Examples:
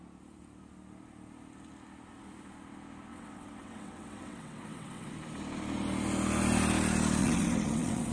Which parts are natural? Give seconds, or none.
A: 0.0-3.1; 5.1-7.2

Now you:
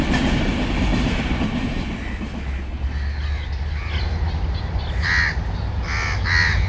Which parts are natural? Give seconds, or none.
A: 0.0-6.7

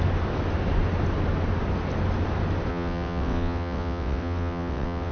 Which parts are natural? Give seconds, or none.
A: 0.0-2.7

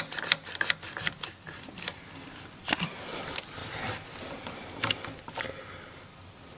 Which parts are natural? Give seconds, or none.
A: 0.0-6.6

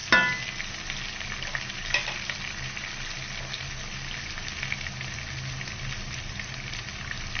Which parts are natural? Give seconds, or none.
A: 0.0-7.4

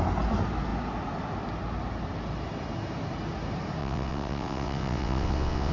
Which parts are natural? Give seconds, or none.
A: 0.0-3.8

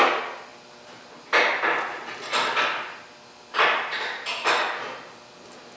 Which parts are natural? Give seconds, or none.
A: 0.0-5.8